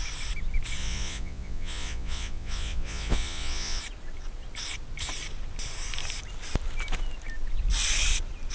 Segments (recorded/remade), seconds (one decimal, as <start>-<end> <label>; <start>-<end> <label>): 0.0-0.8 recorded; 0.8-3.8 remade; 3.8-8.5 recorded